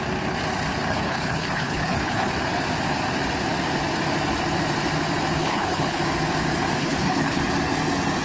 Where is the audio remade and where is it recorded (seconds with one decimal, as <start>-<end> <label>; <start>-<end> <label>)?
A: 0.0-0.9 recorded; 0.9-2.3 remade; 2.3-5.4 recorded; 5.4-6.0 remade; 6.0-6.8 recorded; 6.8-7.4 remade; 7.4-8.2 recorded